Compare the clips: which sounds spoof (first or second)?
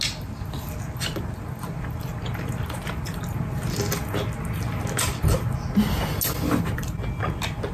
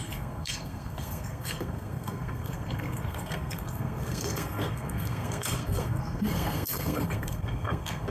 second